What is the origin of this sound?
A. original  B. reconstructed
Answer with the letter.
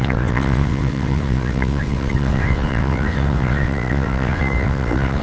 B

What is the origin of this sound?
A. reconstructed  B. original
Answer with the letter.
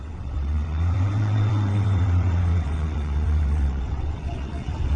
A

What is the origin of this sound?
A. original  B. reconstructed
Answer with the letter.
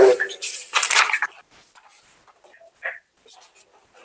A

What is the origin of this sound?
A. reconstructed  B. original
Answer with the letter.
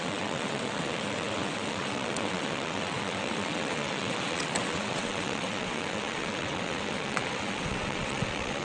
A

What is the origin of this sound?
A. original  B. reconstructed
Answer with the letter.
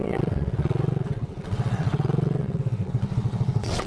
B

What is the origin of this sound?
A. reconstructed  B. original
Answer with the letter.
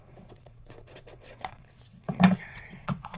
A